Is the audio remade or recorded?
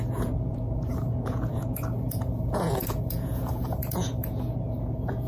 remade